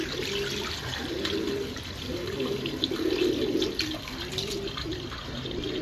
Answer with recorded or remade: recorded